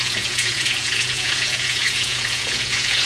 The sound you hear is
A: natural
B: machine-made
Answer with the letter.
B